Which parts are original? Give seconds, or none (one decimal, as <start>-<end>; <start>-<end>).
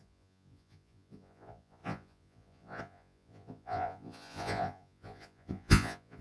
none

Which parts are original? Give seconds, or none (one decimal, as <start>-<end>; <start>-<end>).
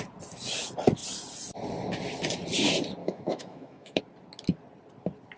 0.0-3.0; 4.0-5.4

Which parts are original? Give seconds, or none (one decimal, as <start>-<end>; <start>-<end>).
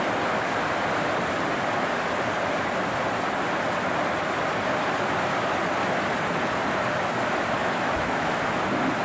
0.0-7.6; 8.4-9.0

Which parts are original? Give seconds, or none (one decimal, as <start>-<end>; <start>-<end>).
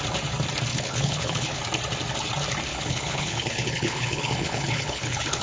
0.0-0.7; 1.6-2.7